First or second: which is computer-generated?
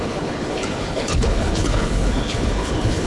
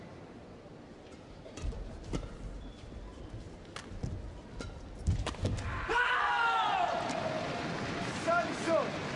first